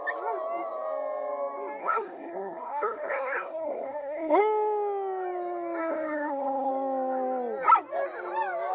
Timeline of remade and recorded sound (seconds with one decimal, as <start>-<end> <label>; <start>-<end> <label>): 0.0-1.8 recorded; 1.8-4.4 remade; 4.4-5.8 recorded; 5.8-6.7 remade; 6.7-8.7 recorded